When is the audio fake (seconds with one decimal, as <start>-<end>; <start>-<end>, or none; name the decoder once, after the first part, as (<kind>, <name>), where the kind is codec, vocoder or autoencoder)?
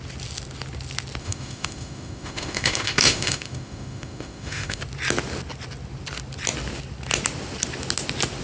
1.2-4.8 (autoencoder, DAC-VAE)